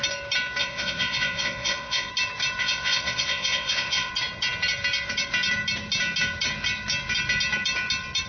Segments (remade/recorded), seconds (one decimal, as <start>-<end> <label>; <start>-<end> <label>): 0.0-0.6 recorded; 0.6-2.1 remade; 2.1-2.6 recorded; 2.6-4.1 remade; 4.1-8.3 recorded